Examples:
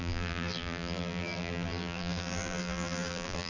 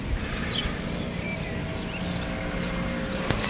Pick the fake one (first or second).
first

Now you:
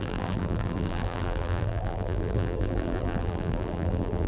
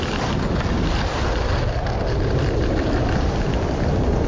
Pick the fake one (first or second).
first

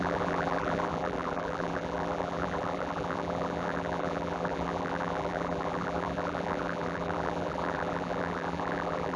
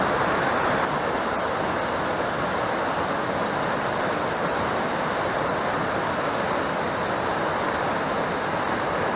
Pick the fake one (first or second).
first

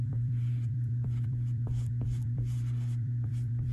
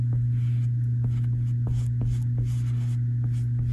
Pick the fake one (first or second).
first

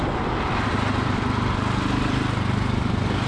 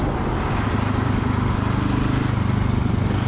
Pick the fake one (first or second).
first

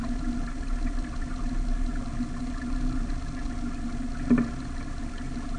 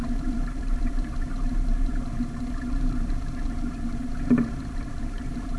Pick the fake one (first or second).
second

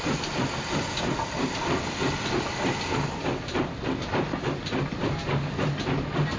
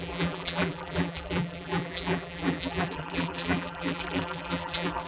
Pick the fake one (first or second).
second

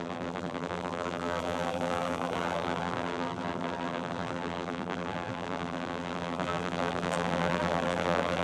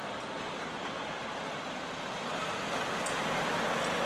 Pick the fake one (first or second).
first